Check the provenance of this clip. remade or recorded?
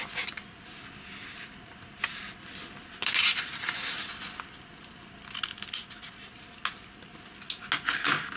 recorded